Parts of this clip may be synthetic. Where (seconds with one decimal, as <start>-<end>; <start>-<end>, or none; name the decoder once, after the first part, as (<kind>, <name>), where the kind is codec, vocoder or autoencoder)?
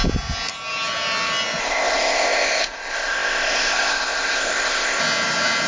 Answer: 1.6-5.0 (codec, ZipCodec)